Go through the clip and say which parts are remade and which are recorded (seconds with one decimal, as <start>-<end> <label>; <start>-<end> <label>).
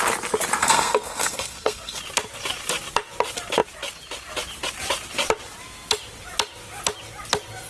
0.0-0.6 recorded; 0.6-2.0 remade; 2.0-7.7 recorded